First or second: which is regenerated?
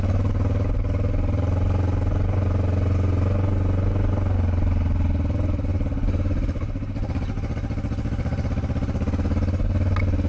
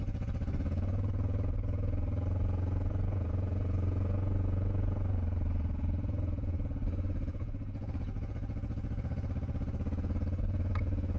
second